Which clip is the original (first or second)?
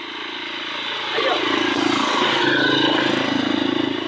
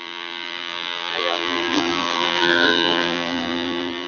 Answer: first